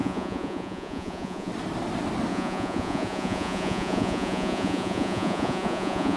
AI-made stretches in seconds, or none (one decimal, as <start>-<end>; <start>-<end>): 0.0-1.5; 2.3-6.2